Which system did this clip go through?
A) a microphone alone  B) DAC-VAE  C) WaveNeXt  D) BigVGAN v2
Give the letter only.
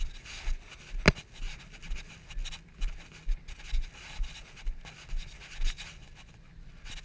A